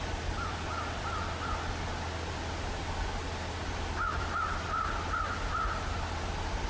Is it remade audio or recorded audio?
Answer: recorded